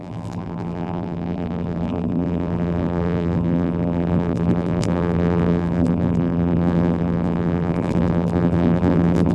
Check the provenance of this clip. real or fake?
fake